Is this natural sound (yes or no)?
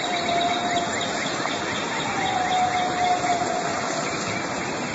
yes